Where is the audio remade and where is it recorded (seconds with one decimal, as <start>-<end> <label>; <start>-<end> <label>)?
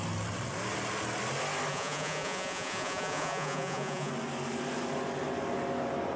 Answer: 0.0-1.7 recorded; 1.7-4.1 remade; 4.1-6.2 recorded